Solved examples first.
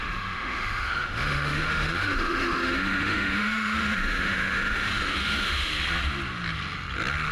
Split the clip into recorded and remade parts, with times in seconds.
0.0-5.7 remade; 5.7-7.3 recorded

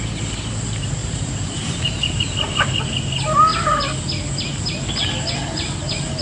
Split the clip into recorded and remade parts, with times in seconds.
0.0-1.0 recorded; 1.0-2.2 remade; 2.2-6.2 recorded